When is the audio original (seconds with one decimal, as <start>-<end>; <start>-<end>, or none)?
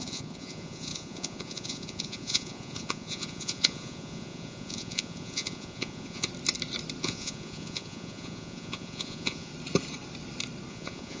6.3-7.0; 9.5-10.7